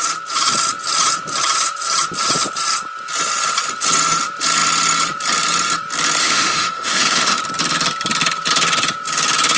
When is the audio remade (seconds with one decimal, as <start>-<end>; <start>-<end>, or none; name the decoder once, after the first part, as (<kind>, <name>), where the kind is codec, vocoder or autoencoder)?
6.2-7.4 (autoencoder, DAC-VAE)